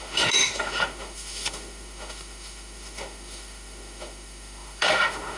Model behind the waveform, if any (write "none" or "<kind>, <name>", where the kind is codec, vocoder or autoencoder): autoencoder, DAC-VAE